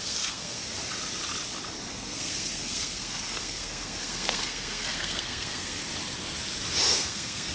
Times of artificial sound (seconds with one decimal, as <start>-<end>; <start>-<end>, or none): 0.0-0.8; 1.9-5.8; 6.9-7.5